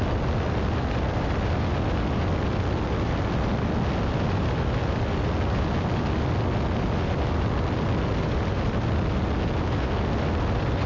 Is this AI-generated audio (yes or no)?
no